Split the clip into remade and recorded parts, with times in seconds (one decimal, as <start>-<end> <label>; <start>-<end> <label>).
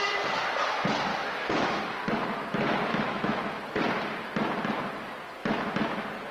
0.0-1.1 recorded; 1.1-1.8 remade; 1.8-2.9 recorded; 2.9-3.6 remade; 3.6-6.3 recorded